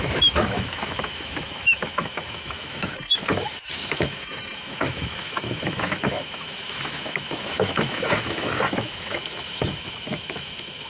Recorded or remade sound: remade